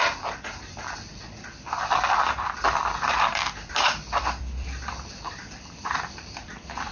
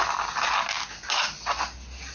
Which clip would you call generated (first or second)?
first